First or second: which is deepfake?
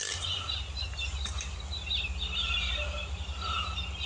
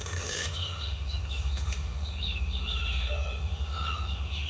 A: second